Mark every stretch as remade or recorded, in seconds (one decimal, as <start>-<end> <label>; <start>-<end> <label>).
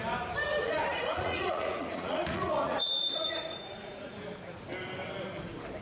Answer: 0.0-0.6 recorded; 0.6-4.1 remade; 4.1-5.8 recorded